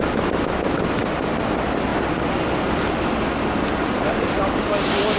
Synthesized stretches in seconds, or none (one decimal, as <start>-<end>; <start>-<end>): 3.8-4.4